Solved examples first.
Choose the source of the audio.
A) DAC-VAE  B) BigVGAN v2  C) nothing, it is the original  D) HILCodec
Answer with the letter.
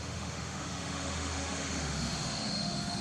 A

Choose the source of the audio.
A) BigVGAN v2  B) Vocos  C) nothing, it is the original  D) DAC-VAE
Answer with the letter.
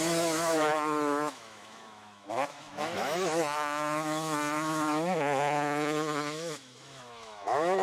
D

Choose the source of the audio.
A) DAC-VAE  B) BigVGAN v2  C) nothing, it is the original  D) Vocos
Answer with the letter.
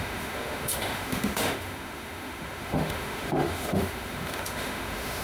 A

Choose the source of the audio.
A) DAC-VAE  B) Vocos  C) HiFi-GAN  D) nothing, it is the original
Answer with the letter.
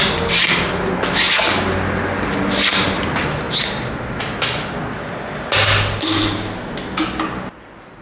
D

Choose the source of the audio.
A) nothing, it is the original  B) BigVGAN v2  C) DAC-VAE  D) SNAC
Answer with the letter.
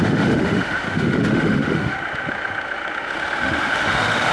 C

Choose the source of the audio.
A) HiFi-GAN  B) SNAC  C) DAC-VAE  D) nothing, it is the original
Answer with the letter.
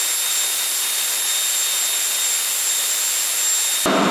D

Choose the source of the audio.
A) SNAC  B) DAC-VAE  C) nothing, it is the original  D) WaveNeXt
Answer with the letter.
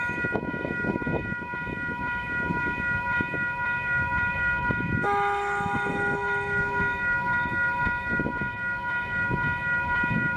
B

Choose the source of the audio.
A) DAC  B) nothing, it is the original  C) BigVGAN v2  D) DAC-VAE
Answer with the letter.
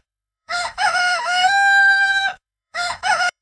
D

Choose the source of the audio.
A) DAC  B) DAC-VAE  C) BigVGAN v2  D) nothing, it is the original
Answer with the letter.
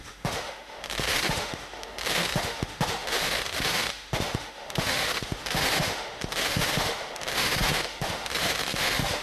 B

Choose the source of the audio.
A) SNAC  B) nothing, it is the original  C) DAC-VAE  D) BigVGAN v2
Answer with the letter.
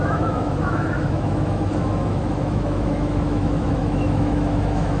C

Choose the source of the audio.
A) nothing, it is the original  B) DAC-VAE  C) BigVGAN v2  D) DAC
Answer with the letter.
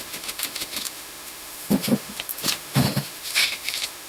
B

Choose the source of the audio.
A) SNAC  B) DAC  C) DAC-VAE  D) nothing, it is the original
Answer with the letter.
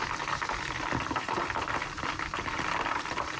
D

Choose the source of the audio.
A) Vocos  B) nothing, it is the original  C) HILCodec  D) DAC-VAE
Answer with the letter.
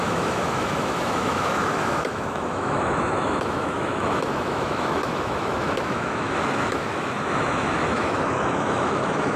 D